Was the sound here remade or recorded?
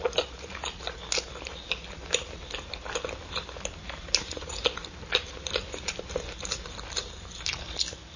recorded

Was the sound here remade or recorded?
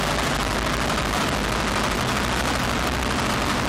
recorded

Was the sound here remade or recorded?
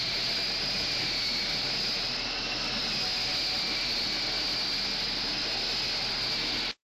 recorded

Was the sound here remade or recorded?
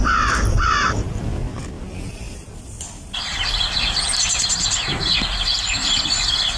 recorded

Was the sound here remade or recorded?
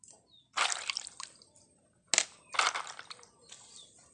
recorded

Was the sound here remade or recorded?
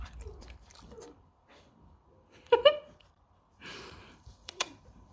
remade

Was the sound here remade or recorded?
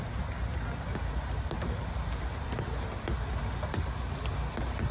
recorded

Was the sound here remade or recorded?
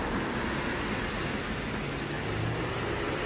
recorded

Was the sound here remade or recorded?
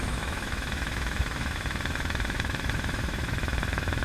remade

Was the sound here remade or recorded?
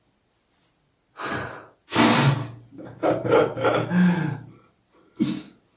recorded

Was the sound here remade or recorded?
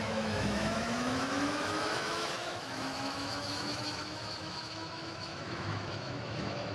remade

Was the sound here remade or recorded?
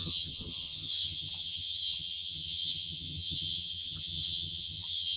remade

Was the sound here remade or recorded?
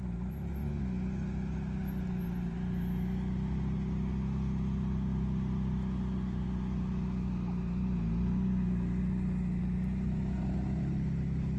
recorded